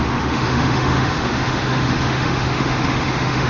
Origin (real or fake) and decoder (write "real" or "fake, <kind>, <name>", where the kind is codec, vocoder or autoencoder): fake, autoencoder, DAC-VAE